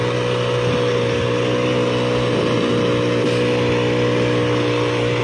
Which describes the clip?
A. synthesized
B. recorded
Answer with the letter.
B